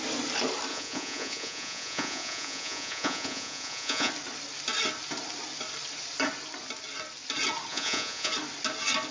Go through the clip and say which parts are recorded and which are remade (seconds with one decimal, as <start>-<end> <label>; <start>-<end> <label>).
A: 0.0-0.7 recorded; 0.7-4.1 remade; 4.1-7.7 recorded; 7.7-8.3 remade; 8.3-9.1 recorded